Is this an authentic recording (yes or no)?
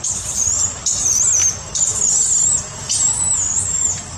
yes